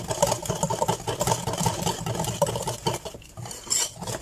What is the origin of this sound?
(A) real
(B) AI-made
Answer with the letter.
A